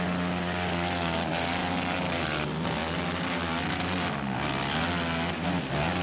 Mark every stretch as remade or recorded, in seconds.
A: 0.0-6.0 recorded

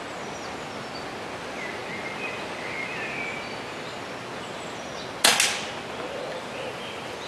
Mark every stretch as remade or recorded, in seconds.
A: 0.0-7.3 recorded

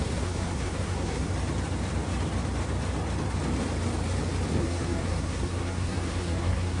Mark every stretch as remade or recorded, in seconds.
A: 0.0-1.3 remade; 1.3-4.6 recorded; 4.6-6.8 remade

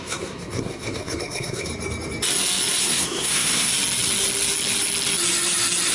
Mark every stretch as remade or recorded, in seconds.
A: 0.0-1.7 remade; 1.7-2.8 recorded; 2.8-3.7 remade; 3.7-5.9 recorded

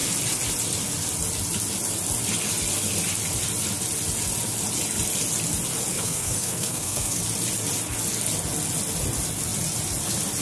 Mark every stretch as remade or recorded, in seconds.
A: 0.0-5.9 recorded; 5.9-7.2 remade; 7.2-10.4 recorded

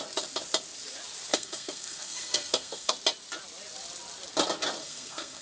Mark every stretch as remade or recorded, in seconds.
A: 0.0-1.3 recorded; 1.3-2.9 remade; 2.9-4.8 recorded; 4.8-5.4 remade

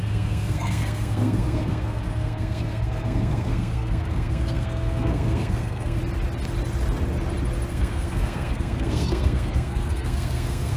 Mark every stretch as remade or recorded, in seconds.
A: 0.0-6.0 remade; 6.0-7.7 recorded; 7.7-10.8 remade